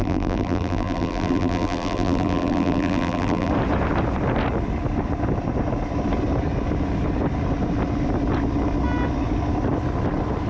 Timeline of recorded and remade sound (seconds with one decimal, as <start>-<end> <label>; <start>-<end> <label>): 0.0-3.5 remade; 3.5-10.5 recorded